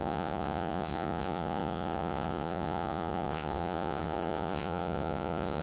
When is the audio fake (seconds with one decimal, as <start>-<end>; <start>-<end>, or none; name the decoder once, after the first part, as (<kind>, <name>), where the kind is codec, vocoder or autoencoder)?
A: 0.0-5.6 (vocoder, Vocos)